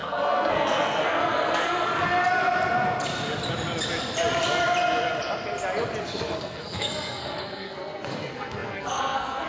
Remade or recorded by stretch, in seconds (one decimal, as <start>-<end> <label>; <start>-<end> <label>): 0.0-1.9 remade; 1.9-6.0 recorded; 6.0-9.5 remade